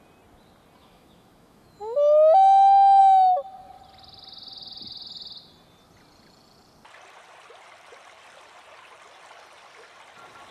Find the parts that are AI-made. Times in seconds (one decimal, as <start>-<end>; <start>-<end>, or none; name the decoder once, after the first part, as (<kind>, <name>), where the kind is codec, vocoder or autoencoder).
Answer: 0.8-3.0 (autoencoder, DAC-VAE)